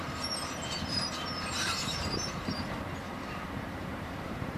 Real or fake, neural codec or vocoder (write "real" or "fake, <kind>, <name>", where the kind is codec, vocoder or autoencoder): fake, vocoder, BigVGAN v2